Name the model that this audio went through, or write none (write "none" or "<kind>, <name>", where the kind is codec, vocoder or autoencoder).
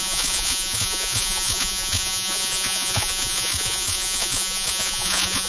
vocoder, Vocos